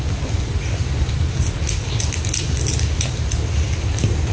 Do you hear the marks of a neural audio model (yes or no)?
no